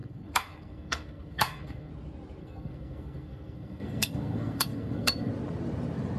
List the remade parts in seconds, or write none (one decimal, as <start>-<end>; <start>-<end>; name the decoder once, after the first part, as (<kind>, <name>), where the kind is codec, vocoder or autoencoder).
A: 0.0-1.9 (codec, SNAC); 2.4-5.3